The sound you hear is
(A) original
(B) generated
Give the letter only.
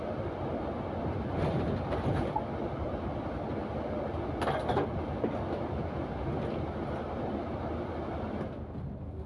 A